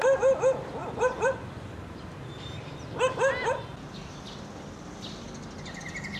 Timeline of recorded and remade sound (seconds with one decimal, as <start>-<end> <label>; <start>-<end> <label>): 0.0-0.8 recorded; 0.8-2.3 remade; 2.3-6.2 recorded